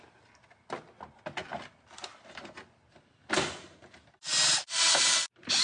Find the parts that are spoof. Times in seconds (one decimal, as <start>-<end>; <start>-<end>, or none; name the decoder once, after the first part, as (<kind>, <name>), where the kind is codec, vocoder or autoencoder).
4.3-5.0 (vocoder, BigVGAN v2)